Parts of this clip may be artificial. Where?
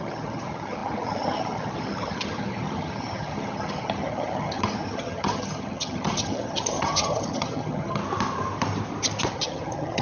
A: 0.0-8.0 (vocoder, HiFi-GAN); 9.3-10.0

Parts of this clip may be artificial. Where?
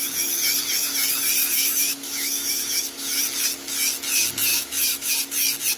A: 1.4-3.2 (autoencoder, DAC-VAE); 4.5-5.1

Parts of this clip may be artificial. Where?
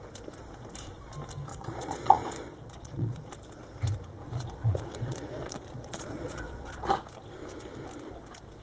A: 1.5-3.3 (vocoder, Vocos); 4.2-6.9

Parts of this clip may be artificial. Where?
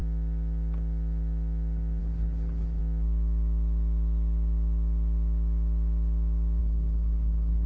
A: 2.0-2.8 (codec, HILCodec); 6.6-7.7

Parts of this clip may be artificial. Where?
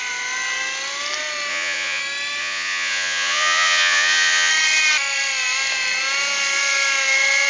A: 1.5-2.0 (vocoder, Vocos); 2.4-4.5